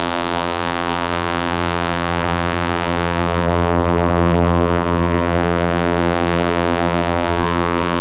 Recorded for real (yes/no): no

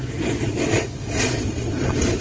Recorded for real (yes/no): no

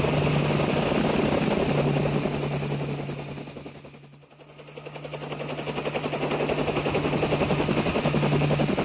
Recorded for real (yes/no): yes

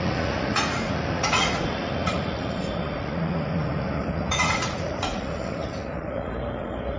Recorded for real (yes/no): no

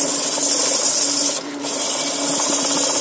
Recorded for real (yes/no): yes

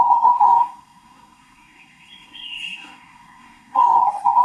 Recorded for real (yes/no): no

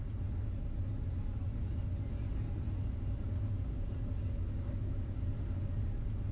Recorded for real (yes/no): yes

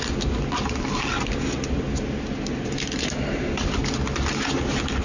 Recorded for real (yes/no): yes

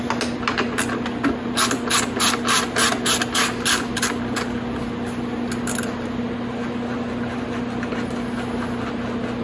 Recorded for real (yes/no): yes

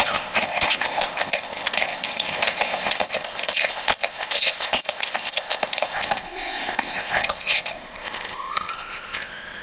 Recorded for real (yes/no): no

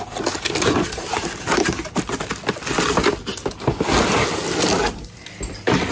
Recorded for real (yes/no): yes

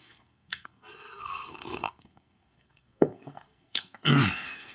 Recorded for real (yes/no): no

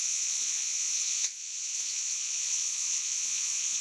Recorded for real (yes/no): no